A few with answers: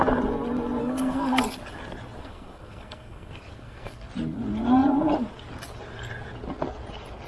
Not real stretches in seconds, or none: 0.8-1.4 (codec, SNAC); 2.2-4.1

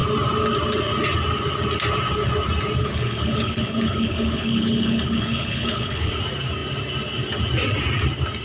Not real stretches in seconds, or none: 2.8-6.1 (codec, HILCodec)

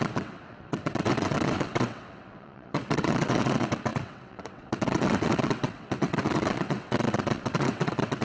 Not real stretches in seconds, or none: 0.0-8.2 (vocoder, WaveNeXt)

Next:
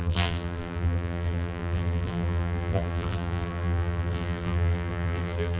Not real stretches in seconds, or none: 0.0-5.6 (vocoder, BigVGAN v2)

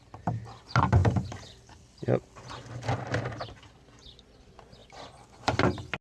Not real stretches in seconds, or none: none

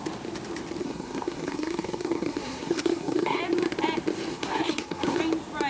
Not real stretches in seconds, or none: 0.8-3.4 (codec, SNAC); 4.3-5.2

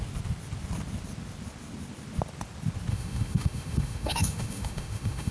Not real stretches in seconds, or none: 2.9-5.3 (autoencoder, DAC-VAE)

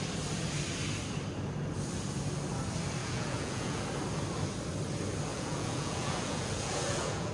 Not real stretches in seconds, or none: 3.0-3.8 (vocoder, Vocos); 5.3-7.3